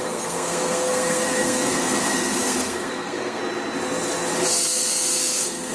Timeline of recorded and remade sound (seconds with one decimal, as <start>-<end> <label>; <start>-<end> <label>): 0.0-3.4 remade; 3.4-4.5 recorded; 4.5-5.7 remade